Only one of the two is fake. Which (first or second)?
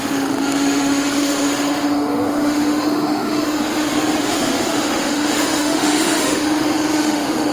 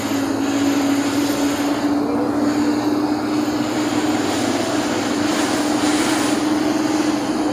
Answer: first